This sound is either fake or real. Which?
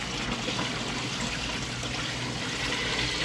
real